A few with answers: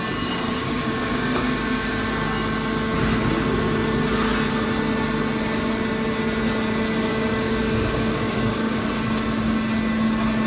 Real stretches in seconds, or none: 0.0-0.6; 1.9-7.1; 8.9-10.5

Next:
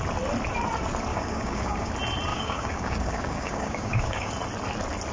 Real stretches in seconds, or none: 0.0-1.1; 1.9-2.3; 4.3-5.1

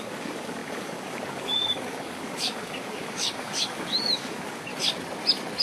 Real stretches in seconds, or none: 4.7-5.6

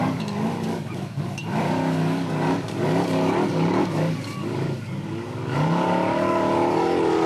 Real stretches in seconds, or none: none

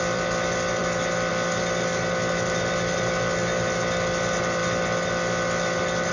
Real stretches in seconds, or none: 0.0-6.1

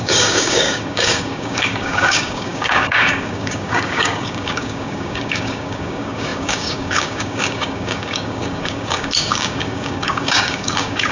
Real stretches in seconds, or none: none

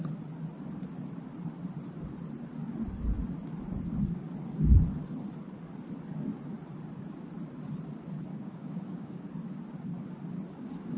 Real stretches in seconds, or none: 0.0-8.3; 9.2-11.0

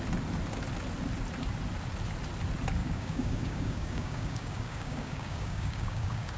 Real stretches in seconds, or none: 0.0-2.8